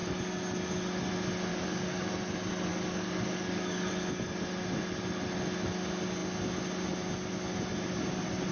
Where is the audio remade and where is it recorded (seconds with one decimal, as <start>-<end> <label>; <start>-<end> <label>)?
0.0-1.5 recorded; 1.5-2.1 remade; 2.1-2.7 recorded; 2.7-3.9 remade; 3.9-8.5 recorded